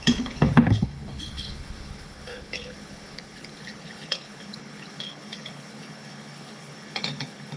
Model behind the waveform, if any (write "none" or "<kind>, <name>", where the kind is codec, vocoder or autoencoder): codec, HILCodec